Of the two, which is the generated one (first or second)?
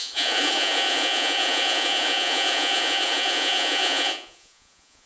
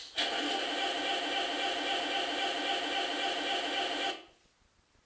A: first